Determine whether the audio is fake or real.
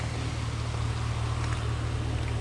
real